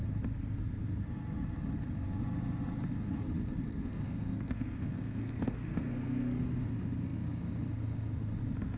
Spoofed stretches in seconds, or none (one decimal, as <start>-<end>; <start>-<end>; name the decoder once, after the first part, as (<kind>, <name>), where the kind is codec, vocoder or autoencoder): 3.7-6.4 (codec, SNAC)